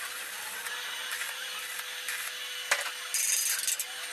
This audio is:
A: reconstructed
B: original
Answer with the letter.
B